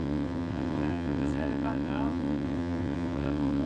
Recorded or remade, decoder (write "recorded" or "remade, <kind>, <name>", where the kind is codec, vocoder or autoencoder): remade, vocoder, WaveNeXt